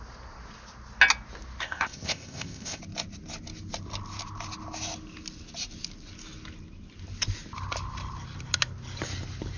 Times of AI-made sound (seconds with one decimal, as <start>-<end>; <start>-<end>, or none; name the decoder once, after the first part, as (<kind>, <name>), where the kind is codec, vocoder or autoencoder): 1.6-2.8 (codec, ZipCodec)